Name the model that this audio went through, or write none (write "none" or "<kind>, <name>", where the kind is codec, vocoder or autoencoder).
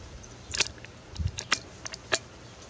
none